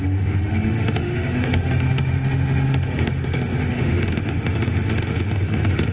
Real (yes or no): no